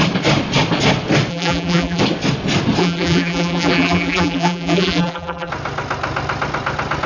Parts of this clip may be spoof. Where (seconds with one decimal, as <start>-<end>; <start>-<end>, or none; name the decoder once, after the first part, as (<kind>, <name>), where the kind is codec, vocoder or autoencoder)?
1.3-2.0 (vocoder, BigVGAN v2); 2.8-5.5